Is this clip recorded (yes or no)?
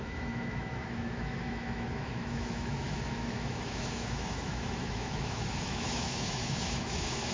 no